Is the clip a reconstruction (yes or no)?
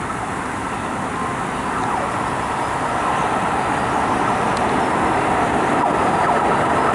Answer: no